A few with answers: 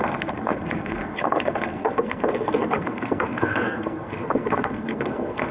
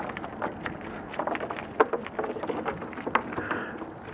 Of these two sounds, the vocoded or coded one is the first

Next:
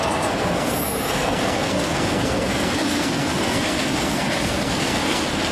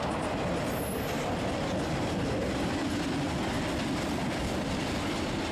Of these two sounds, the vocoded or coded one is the first